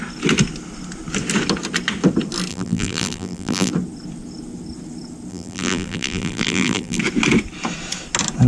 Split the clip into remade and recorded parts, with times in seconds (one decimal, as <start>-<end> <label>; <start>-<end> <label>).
0.0-2.5 recorded; 2.5-3.7 remade; 3.7-5.3 recorded; 5.3-7.0 remade; 7.0-8.5 recorded